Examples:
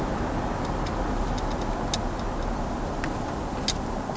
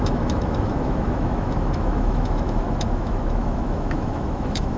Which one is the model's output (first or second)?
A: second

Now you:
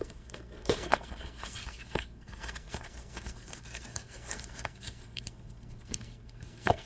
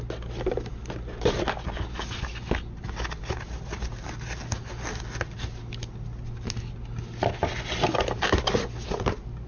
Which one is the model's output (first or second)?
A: first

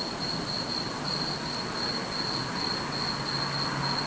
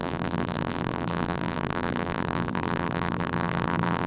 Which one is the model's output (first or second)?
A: second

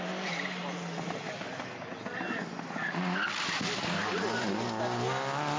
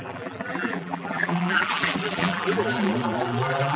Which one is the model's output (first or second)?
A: second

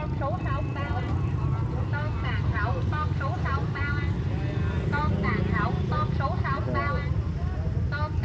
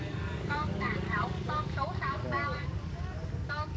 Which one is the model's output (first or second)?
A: second